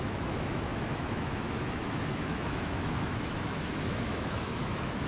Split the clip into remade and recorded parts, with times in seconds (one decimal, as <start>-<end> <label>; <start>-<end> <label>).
0.0-5.1 remade